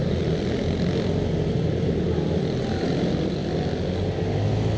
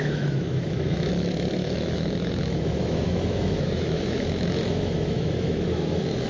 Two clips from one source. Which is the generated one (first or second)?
second